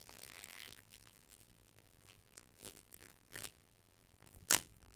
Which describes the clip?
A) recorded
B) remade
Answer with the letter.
B